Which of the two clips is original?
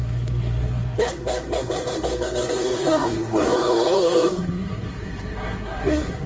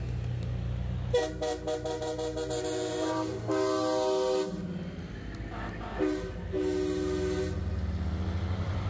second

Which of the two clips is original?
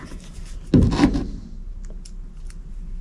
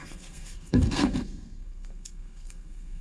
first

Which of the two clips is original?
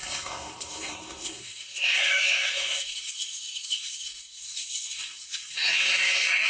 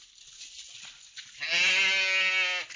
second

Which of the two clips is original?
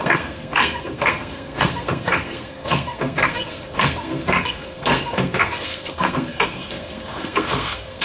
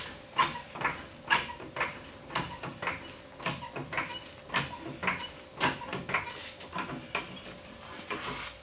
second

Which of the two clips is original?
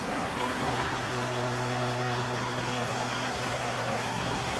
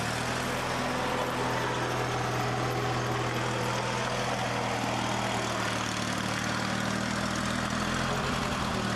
second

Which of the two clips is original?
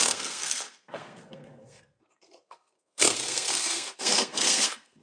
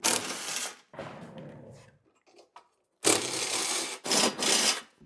second